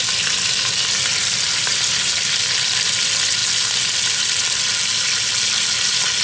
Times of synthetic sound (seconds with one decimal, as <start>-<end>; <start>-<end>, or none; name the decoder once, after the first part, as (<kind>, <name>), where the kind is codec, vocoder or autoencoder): none